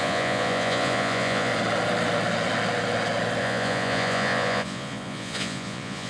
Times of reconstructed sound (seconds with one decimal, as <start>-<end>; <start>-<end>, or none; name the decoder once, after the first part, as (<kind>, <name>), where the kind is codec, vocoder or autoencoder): 0.0-1.5 (vocoder, Vocos); 3.4-6.1